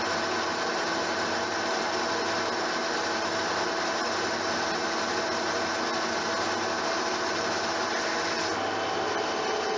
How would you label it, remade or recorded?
recorded